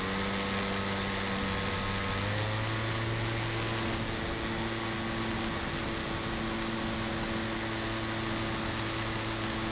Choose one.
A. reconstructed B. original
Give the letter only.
B